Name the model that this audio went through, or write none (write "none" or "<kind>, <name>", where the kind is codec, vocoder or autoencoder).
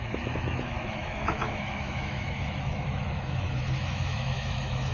autoencoder, DAC-VAE